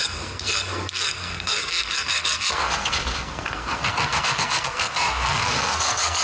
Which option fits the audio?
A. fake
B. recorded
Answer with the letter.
A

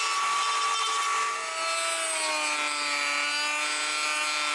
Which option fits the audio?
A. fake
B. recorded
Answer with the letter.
B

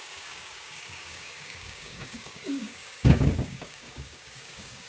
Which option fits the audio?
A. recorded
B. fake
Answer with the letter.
B